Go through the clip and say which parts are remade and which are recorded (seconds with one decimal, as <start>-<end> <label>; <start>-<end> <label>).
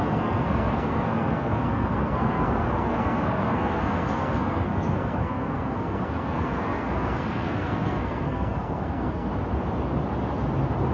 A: 0.0-9.3 remade; 9.3-10.9 recorded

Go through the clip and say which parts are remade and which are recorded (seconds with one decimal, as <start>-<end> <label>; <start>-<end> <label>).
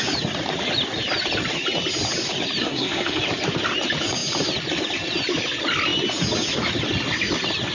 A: 0.0-2.6 recorded; 2.6-3.2 remade; 3.2-7.7 recorded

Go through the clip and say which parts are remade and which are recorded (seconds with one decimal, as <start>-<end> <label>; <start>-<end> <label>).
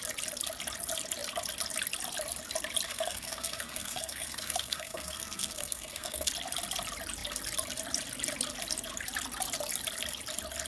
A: 0.0-2.9 recorded; 2.9-6.3 remade; 6.3-10.7 recorded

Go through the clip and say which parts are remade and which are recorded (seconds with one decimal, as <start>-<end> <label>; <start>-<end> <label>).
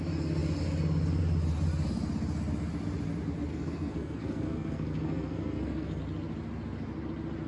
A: 0.0-3.5 recorded; 3.5-6.0 remade; 6.0-7.5 recorded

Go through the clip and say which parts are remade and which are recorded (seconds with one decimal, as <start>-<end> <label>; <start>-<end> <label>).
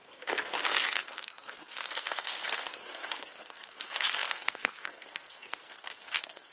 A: 0.0-6.5 remade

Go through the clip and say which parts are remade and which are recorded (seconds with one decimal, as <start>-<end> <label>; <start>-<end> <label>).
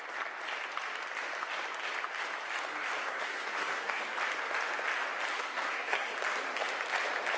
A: 0.0-3.0 recorded; 3.0-4.0 remade; 4.0-5.3 recorded; 5.3-6.1 remade; 6.1-7.4 recorded